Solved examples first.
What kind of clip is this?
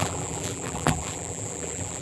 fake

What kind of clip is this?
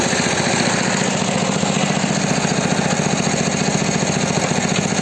real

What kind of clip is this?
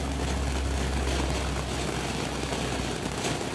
real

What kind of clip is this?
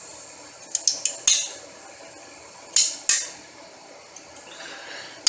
real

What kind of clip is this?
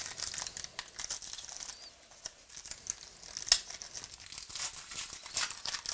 real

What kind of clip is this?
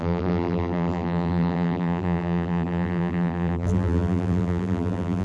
fake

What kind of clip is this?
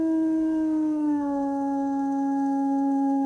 fake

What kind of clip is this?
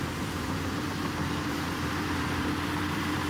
fake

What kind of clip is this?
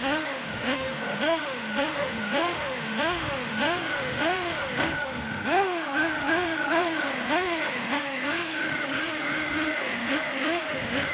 fake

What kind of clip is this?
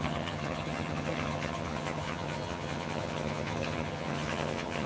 fake